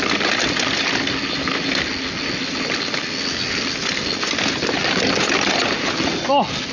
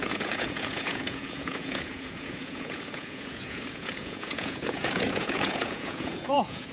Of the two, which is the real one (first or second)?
first